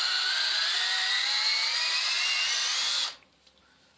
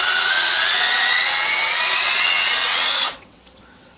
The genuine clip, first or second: first